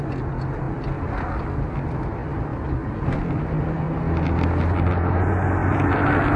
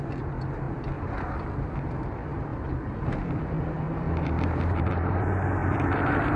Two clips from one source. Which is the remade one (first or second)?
second